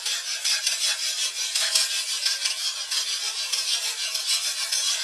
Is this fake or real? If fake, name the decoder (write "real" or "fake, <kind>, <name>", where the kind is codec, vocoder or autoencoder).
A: real